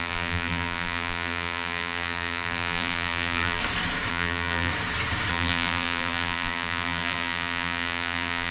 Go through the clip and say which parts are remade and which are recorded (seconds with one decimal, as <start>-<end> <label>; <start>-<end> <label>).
0.0-3.6 remade; 3.6-4.1 recorded; 4.1-4.7 remade; 4.7-5.3 recorded; 5.3-8.5 remade